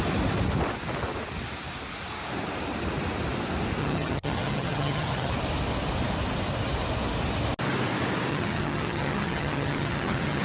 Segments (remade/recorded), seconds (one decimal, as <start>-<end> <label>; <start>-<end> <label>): 0.0-3.8 recorded; 3.8-5.3 remade; 5.3-8.3 recorded; 8.3-10.4 remade